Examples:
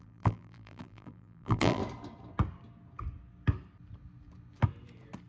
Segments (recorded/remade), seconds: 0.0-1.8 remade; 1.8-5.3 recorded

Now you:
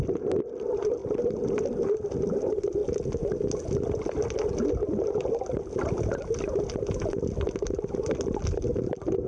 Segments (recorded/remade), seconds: 0.0-1.0 recorded; 1.0-2.4 remade; 2.4-9.3 recorded

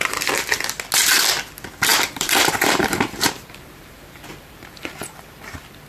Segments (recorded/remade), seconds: 0.0-1.9 recorded; 1.9-5.4 remade; 5.4-5.9 recorded

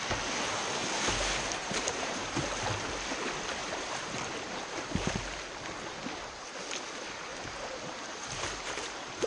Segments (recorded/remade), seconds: 0.0-1.6 recorded; 1.6-2.4 remade; 2.4-3.6 recorded; 3.6-4.6 remade; 4.6-7.3 recorded; 7.3-9.3 remade

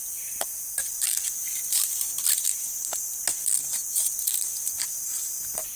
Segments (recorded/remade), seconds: 0.0-1.4 recorded; 1.4-2.1 remade; 2.1-5.8 recorded

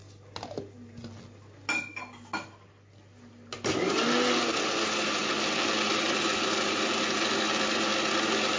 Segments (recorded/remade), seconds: 0.0-8.6 recorded

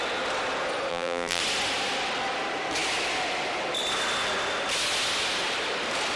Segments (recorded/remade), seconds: 0.0-0.9 recorded; 0.9-1.4 remade; 1.4-6.2 recorded